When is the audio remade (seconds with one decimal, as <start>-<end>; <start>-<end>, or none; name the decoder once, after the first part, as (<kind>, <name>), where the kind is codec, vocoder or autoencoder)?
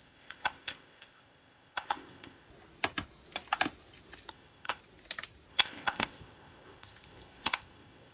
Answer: 0.0-2.5 (codec, ZipCodec); 4.3-4.8; 5.5-8.1